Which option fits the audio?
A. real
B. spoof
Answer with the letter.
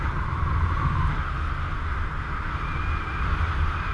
A